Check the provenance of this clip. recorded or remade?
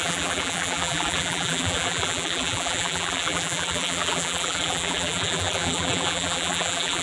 remade